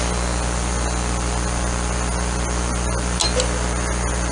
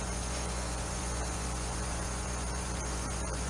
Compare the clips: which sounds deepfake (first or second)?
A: second